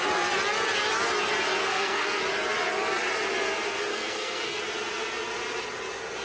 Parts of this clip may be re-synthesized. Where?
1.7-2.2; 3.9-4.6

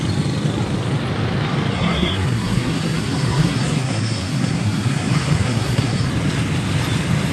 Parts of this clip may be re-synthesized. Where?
1.7-6.1

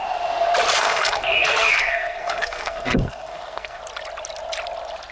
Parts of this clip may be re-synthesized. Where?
0.7-3.8